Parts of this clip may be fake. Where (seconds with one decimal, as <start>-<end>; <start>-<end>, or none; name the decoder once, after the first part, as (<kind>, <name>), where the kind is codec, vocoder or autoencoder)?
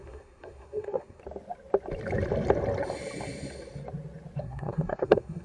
0.0-1.2 (codec, SNAC); 4.4-5.4